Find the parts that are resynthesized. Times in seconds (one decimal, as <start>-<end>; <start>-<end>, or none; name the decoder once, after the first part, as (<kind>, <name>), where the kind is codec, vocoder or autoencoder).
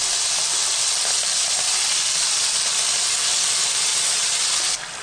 3.9-4.6 (vocoder, WaveNeXt)